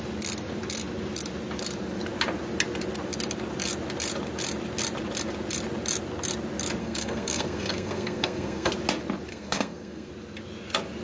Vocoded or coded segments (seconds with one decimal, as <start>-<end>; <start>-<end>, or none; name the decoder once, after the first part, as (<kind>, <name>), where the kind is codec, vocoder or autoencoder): 6.8-8.7 (codec, SNAC); 9.3-10.1

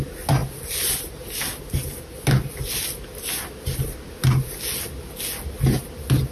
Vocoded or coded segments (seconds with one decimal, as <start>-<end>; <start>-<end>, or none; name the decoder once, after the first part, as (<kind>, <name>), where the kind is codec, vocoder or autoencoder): none

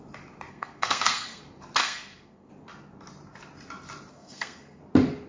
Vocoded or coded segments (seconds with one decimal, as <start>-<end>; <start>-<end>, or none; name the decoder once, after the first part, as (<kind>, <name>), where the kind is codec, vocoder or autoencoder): 0.5-1.4 (codec, SNAC); 1.8-2.5; 4.1-4.8

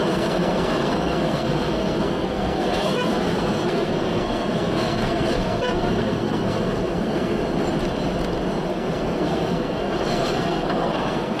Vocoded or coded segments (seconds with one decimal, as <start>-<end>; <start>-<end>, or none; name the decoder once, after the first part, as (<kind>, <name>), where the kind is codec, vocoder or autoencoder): 0.0-7.4 (codec, SNAC); 8.7-11.4

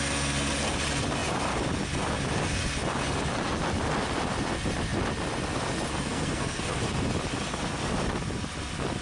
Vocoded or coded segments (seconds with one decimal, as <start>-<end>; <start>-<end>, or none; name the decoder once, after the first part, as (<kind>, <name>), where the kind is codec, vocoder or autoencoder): 5.9-6.8 (codec, SNAC)

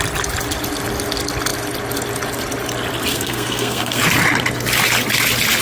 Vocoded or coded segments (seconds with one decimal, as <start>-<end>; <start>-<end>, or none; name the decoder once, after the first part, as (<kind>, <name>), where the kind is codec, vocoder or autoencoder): 3.1-4.0 (codec, SNAC)

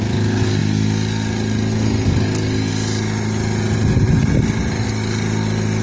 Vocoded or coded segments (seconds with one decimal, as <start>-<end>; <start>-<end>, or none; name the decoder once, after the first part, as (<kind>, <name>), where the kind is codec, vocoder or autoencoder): none

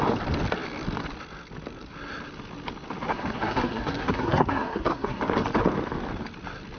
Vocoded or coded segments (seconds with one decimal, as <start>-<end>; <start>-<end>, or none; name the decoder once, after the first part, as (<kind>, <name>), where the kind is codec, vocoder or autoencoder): 3.1-5.2 (codec, SNAC)